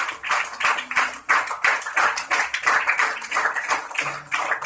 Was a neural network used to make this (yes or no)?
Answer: no